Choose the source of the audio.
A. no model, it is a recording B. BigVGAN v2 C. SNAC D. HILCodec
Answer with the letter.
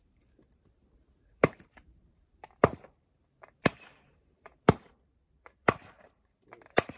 B